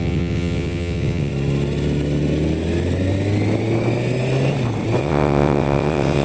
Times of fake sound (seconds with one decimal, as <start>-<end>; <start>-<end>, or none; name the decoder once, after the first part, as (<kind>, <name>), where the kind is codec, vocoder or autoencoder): 0.0-1.3 (vocoder, WaveNeXt); 5.0-6.2